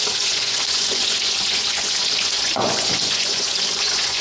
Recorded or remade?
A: remade